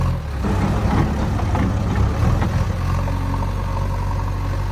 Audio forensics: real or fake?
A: real